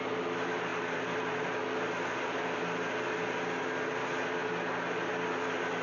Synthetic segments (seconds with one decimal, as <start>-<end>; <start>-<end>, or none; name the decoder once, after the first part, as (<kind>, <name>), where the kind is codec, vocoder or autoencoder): 0.7-3.2 (vocoder, BigVGAN v2)